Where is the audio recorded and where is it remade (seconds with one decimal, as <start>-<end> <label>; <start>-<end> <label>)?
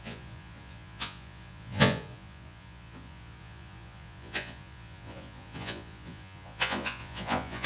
0.0-7.7 remade